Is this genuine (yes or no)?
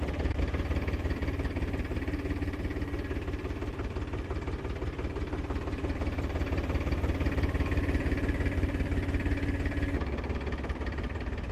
yes